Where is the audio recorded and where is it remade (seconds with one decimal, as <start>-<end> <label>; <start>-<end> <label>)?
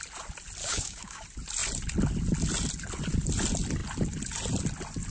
0.0-0.6 recorded; 0.6-1.2 remade; 1.2-5.1 recorded